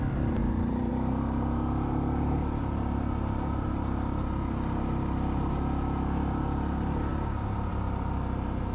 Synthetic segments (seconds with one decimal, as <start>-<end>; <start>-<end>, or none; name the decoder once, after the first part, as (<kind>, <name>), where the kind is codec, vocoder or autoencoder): 0.4-0.9 (vocoder, BigVGAN v2)